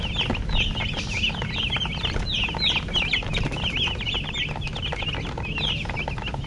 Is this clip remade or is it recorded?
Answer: recorded